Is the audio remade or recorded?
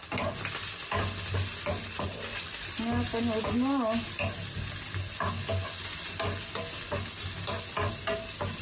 recorded